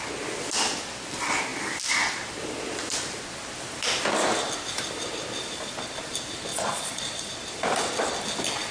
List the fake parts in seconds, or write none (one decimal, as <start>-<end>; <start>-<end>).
6.5-7.3